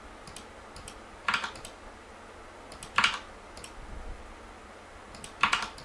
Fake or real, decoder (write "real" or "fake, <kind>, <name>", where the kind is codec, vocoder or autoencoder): real